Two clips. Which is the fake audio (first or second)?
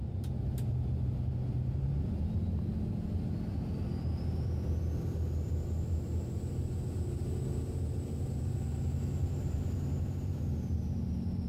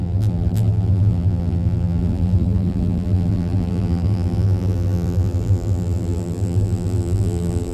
second